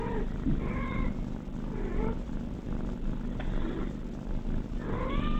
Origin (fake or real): fake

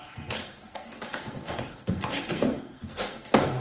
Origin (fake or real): fake